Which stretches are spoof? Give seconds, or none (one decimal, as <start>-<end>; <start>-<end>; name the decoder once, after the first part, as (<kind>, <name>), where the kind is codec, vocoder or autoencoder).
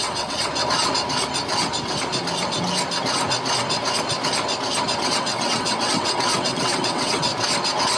0.0-0.5 (vocoder, WaveNeXt); 5.0-7.3